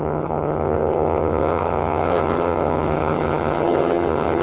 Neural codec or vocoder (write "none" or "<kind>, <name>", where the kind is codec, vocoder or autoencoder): vocoder, HiFi-GAN